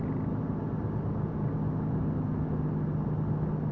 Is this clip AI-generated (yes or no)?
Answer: no